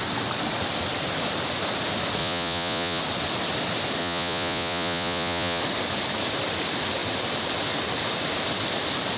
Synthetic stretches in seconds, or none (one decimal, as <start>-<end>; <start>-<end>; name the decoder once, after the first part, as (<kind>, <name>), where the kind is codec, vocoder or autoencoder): 2.2-3.0 (vocoder, Vocos); 4.0-5.6